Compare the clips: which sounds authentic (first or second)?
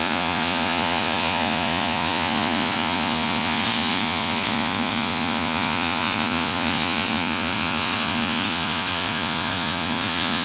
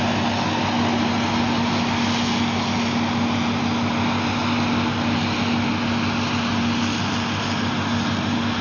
second